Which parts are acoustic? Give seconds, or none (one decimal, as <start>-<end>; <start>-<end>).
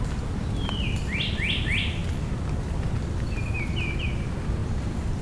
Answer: 0.0-4.6